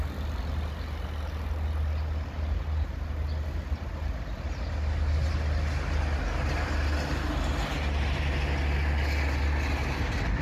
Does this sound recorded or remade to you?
recorded